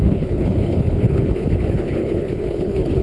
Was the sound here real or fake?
fake